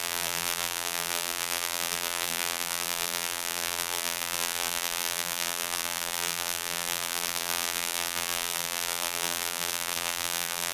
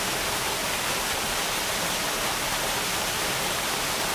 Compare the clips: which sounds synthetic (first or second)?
first